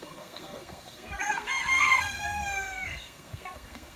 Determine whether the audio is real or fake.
fake